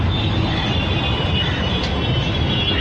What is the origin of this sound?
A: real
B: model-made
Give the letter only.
A